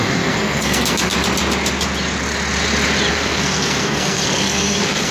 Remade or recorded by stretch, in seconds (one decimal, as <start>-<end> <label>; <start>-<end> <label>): 0.0-1.1 remade; 1.1-3.1 recorded; 3.1-5.1 remade